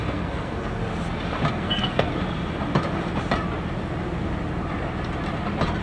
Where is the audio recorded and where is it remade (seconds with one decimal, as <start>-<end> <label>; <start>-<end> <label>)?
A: 0.0-0.8 remade; 0.8-1.5 recorded; 1.5-2.1 remade; 2.1-5.8 recorded